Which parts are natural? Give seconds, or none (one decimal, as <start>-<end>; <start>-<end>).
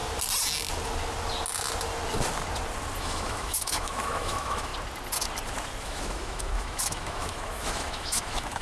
0.0-3.0; 4.7-5.8